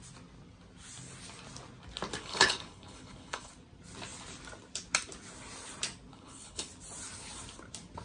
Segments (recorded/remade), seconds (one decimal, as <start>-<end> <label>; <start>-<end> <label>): 0.0-2.2 recorded; 2.2-3.5 remade; 3.5-6.1 recorded; 6.1-6.7 remade; 6.7-8.0 recorded